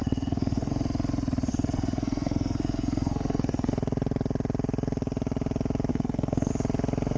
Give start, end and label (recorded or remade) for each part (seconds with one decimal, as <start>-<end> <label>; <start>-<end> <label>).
0.0-0.7 remade; 0.7-1.5 recorded; 1.5-3.7 remade; 3.7-5.9 recorded; 5.9-6.5 remade; 6.5-7.2 recorded